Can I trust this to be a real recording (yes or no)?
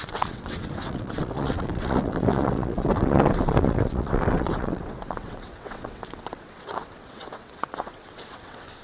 no